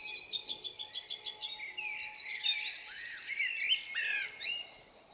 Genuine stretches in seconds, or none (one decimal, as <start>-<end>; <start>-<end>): 0.0-5.1